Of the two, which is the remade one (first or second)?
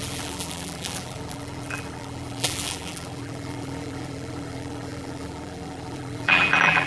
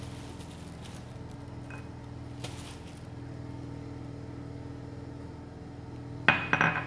first